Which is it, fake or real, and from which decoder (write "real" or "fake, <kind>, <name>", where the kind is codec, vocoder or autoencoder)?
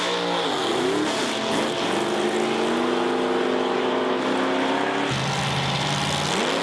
real